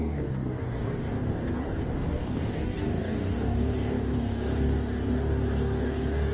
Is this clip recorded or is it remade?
remade